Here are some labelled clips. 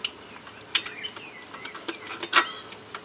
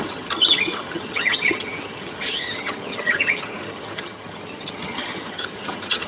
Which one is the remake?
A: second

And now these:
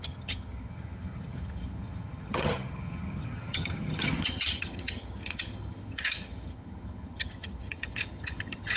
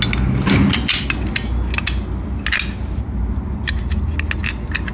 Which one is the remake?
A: first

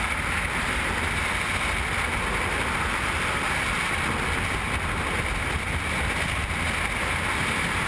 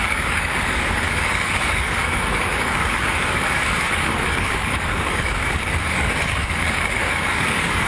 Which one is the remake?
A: second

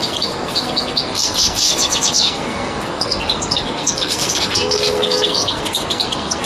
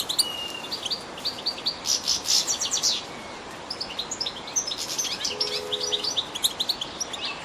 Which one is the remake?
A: first